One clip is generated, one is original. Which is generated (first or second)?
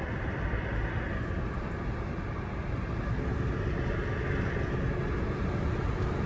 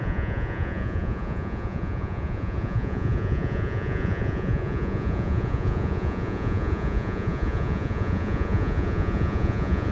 second